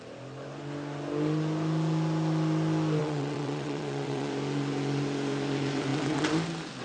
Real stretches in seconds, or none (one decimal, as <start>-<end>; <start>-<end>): 0.0-3.0; 4.3-6.8